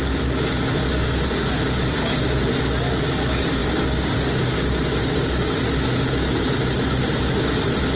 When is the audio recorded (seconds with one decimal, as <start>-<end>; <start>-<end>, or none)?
0.0-8.0

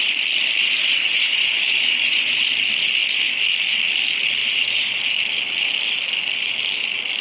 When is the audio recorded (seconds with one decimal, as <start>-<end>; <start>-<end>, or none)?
0.0-0.6; 2.4-4.4; 5.0-7.2

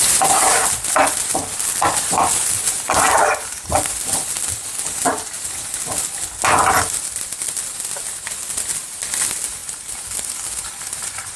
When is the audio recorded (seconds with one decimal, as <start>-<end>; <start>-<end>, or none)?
0.0-11.4

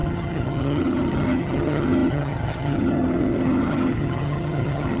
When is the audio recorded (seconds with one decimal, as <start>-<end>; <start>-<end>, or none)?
none

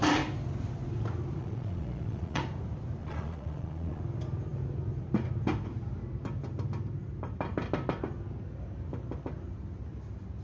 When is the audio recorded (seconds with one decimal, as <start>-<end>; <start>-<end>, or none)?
0.0-1.4; 2.4-3.0; 4.0-10.4